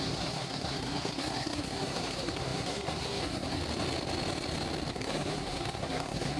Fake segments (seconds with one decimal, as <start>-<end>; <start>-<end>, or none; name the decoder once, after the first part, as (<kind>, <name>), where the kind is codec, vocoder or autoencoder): 0.0-3.6 (codec, SNAC); 4.9-6.4